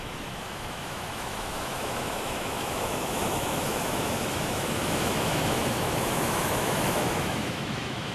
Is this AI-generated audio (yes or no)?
yes